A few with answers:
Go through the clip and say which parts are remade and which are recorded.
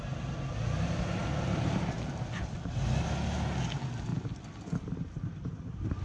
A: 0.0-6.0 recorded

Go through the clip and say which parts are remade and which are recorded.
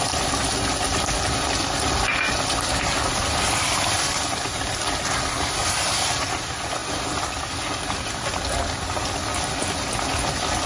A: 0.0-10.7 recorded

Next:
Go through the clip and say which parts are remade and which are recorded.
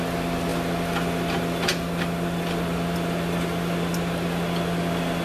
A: 0.0-5.2 recorded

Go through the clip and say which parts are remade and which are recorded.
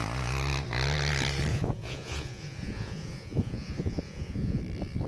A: 0.0-1.5 recorded; 1.5-4.6 remade; 4.6-5.1 recorded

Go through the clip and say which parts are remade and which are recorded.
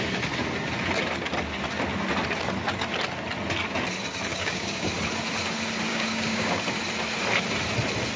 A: 0.0-4.3 recorded; 4.3-4.9 remade; 4.9-5.9 recorded; 5.9-6.6 remade; 6.6-8.2 recorded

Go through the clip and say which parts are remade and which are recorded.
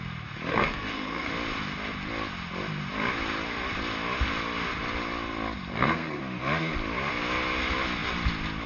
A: 0.0-0.5 recorded; 0.5-1.3 remade; 1.3-5.7 recorded; 5.7-6.2 remade; 6.2-8.7 recorded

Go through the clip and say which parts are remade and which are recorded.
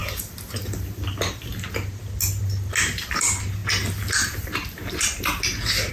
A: 0.0-5.9 recorded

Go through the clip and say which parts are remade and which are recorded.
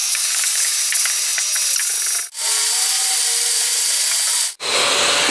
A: 0.0-0.8 remade; 0.8-5.3 recorded